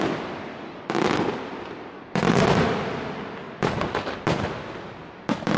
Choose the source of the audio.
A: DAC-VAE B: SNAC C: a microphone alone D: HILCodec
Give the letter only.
C